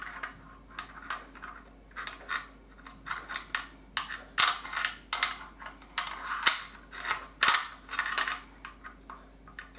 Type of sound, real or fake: real